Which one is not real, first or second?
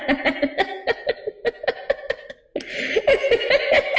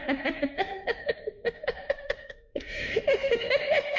second